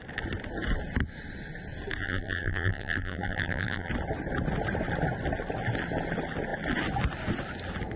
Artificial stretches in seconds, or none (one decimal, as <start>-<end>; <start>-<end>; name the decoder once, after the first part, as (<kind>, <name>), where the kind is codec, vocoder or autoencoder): 2.0-3.9 (vocoder, BigVGAN v2)